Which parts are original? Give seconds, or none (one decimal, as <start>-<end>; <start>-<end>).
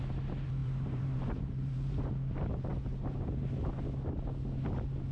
0.0-0.6; 2.0-5.1